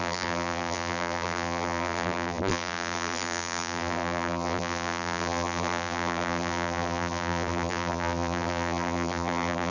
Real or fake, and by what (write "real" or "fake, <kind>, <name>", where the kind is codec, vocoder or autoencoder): fake, vocoder, BigVGAN v2